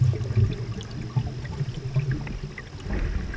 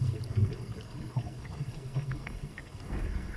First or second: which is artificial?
second